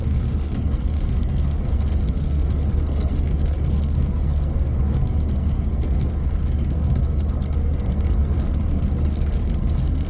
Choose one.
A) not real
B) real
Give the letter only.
A